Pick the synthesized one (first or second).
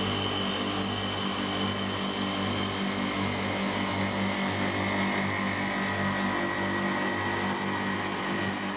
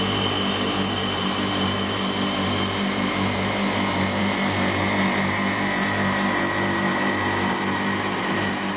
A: second